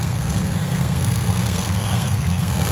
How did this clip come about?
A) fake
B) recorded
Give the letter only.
A